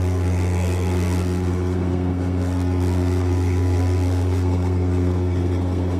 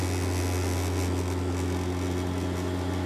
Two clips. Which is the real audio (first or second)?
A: second